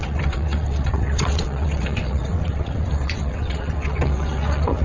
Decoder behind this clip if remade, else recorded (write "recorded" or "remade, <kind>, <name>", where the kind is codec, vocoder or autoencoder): remade, vocoder, WaveNeXt